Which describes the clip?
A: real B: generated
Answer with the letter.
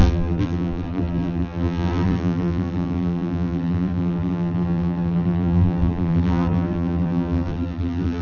B